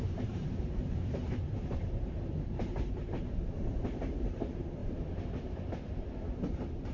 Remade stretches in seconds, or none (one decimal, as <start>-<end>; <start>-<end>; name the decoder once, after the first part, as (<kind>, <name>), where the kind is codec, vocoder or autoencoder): 0.0-6.9 (vocoder, BigVGAN v2)